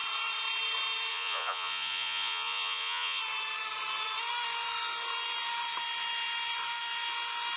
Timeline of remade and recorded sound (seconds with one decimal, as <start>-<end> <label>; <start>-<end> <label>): 0.0-1.1 recorded; 1.1-3.2 remade; 3.2-7.6 recorded